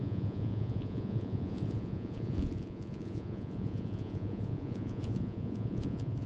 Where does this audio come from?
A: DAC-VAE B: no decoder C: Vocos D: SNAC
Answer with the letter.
C